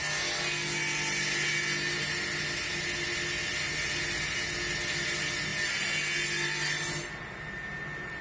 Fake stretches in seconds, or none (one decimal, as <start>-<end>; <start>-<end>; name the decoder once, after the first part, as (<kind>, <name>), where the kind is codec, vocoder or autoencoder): none